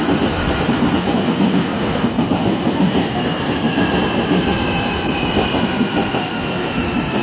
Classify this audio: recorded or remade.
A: remade